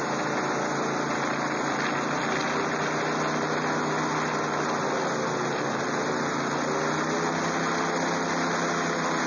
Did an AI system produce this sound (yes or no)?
no